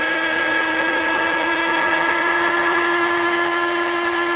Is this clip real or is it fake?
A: fake